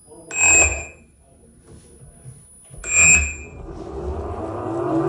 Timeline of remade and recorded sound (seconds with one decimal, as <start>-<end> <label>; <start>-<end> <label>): 0.0-5.1 recorded